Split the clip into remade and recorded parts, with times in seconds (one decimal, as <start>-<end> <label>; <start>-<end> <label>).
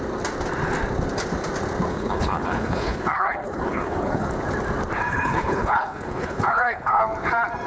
0.0-1.9 recorded; 1.9-4.3 remade; 4.3-5.1 recorded; 5.1-7.0 remade; 7.0-7.7 recorded